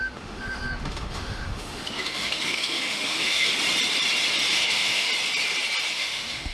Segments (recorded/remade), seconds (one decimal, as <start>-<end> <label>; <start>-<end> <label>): 0.0-3.5 remade; 3.5-4.5 recorded; 4.5-5.1 remade; 5.1-5.9 recorded; 5.9-6.5 remade